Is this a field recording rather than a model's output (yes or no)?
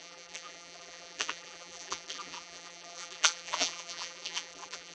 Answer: no